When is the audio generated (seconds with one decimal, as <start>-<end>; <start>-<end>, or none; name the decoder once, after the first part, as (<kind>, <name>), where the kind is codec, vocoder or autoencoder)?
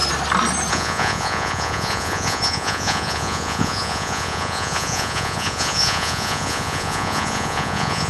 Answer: 0.7-8.1 (vocoder, Vocos)